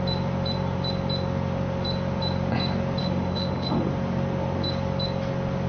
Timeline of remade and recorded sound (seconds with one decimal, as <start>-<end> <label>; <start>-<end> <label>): 0.0-3.0 recorded; 3.0-3.9 remade; 3.9-5.7 recorded